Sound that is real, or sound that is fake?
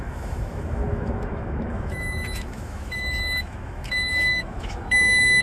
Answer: fake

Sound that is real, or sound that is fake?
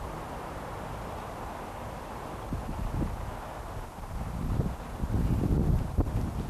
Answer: real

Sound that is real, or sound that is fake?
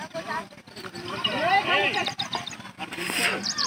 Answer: fake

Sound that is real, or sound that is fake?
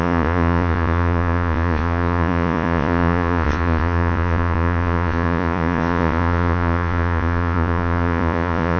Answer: fake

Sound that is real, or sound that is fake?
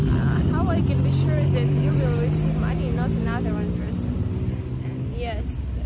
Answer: real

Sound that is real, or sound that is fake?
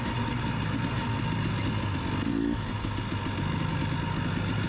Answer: real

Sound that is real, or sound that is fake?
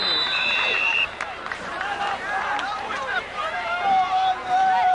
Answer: fake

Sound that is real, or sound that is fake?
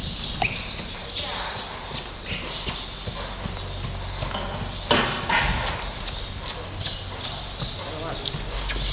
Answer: real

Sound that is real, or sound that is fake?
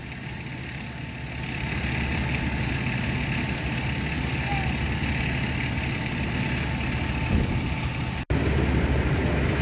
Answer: real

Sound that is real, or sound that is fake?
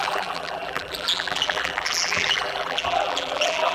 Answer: fake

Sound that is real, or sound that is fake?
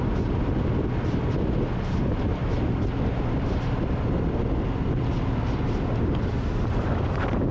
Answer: real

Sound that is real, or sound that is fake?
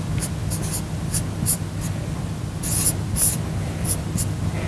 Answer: real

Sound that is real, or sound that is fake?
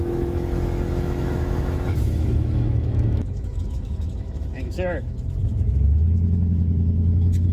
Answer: fake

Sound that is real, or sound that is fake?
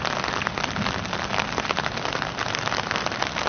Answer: real